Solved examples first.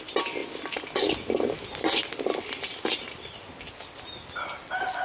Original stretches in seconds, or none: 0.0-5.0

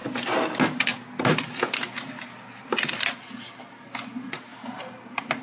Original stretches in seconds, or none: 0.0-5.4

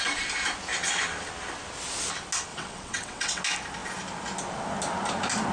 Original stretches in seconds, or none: 0.0-2.5; 3.4-5.5

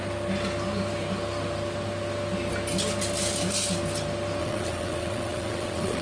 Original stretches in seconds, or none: 0.0-4.4

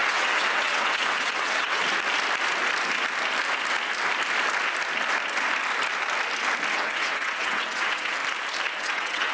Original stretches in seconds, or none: 1.8-6.7; 8.2-8.8

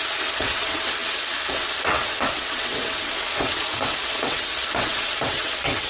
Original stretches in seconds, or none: none

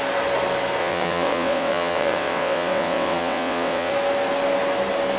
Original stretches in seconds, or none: 0.0-0.8; 3.9-5.2